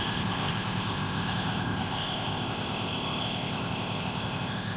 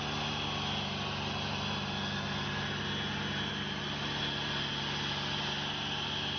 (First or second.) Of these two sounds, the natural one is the second